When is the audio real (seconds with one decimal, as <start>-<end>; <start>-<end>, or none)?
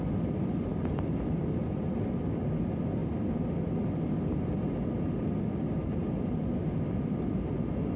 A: 0.0-8.0